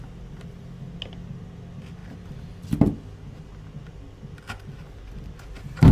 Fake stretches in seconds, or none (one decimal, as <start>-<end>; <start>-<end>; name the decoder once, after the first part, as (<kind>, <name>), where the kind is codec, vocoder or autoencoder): none